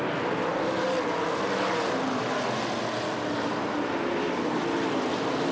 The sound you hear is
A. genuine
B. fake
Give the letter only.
A